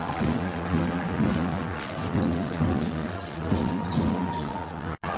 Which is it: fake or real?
fake